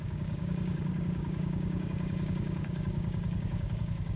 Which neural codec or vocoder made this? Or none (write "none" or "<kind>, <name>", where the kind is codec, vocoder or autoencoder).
codec, DAC